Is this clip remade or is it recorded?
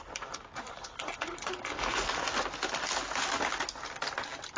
recorded